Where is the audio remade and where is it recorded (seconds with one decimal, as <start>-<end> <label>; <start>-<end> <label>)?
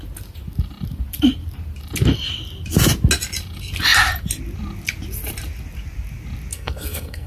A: 0.0-6.5 recorded; 6.5-7.3 remade